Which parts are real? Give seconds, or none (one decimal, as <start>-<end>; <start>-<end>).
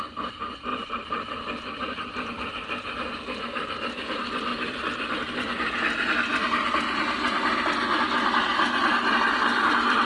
0.0-0.7; 2.3-10.0